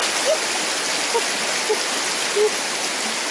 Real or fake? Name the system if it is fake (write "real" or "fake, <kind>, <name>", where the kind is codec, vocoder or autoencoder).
real